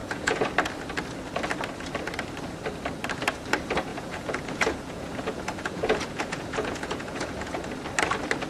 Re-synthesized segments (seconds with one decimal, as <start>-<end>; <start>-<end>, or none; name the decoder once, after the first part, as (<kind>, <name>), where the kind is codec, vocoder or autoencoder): 0.0-0.5 (vocoder, Vocos); 3.9-7.6